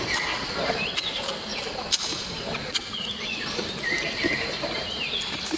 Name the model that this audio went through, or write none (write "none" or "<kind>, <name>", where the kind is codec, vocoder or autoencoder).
none